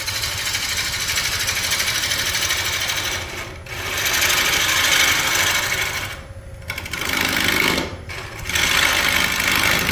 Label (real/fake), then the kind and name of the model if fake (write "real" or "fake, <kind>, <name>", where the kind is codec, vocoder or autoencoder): real